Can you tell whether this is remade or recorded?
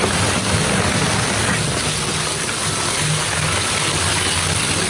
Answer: recorded